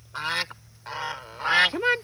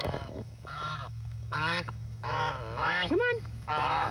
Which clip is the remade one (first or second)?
second